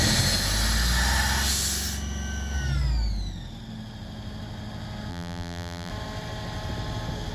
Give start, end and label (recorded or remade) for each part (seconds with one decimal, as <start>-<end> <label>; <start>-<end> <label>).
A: 0.0-5.1 recorded; 5.1-5.9 remade; 5.9-7.3 recorded